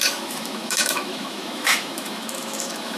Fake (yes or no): yes